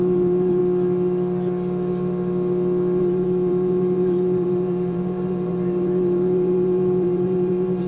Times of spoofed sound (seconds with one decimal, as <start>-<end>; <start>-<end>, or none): 0.0-0.6; 3.0-7.9